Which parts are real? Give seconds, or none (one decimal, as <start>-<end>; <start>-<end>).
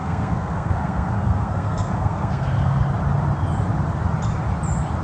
2.8-5.0